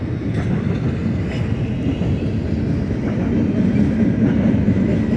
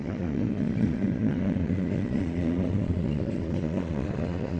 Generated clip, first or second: second